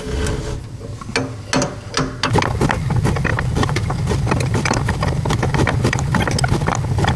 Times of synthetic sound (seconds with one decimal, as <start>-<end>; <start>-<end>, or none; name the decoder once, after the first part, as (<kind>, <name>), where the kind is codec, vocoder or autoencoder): 3.3-6.2 (vocoder, BigVGAN v2)